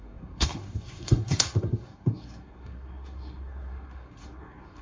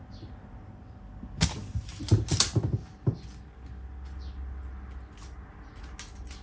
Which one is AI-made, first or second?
first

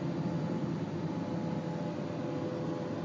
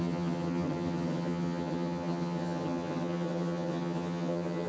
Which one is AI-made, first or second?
second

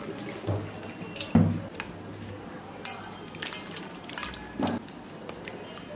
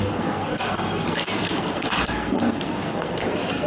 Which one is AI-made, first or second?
second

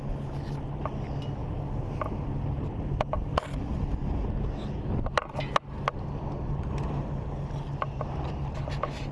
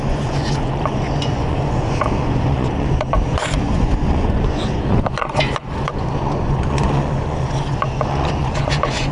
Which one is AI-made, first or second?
second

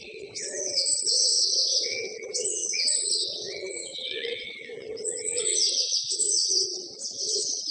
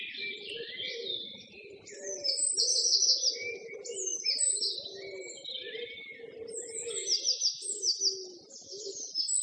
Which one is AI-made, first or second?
first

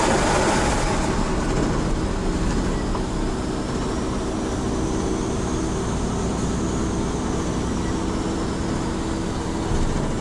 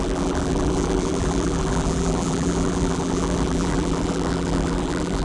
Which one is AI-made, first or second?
second